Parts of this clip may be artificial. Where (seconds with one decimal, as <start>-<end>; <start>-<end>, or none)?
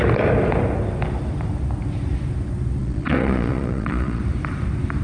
2.8-4.2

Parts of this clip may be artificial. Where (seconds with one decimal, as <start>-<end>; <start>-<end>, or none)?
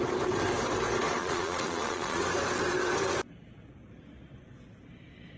1.2-2.2